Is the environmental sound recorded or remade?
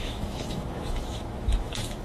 remade